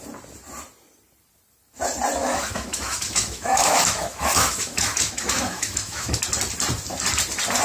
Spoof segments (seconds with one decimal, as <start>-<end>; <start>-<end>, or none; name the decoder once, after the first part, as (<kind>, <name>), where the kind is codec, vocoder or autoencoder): 2.2-6.2 (autoencoder, DAC-VAE)